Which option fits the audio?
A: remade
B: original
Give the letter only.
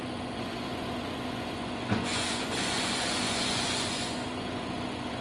A